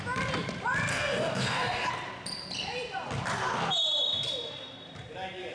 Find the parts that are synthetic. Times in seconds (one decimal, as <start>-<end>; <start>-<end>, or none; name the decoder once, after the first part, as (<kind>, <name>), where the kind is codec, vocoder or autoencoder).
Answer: 0.9-1.9 (codec, DAC)